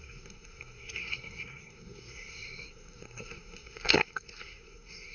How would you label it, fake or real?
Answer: fake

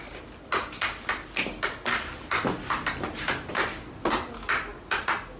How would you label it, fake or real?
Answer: real